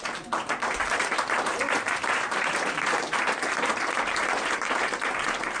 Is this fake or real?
fake